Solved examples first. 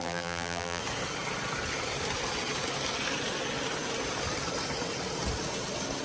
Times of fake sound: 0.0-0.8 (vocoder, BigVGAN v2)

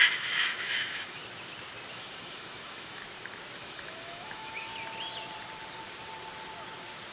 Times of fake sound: 0.0-1.2 (autoencoder, DAC-VAE); 1.9-3.0; 3.6-4.7

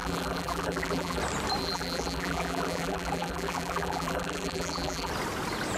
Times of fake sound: 0.0-1.2 (vocoder, BigVGAN v2); 1.6-5.1

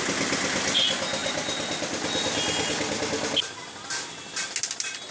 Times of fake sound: none

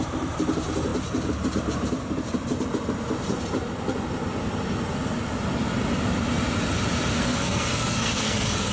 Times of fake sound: 7.1-8.7 (codec, SNAC)

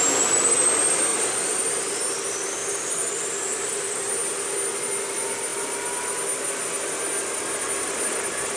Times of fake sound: 1.1-2.0 (vocoder, BigVGAN v2); 2.6-4.1

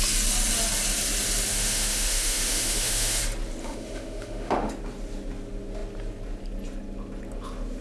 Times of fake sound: 1.5-3.2 (autoencoder, DAC-VAE); 3.6-4.7

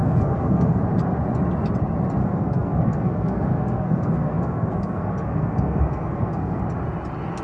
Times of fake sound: 0.0-0.8 (codec, SNAC); 2.2-6.6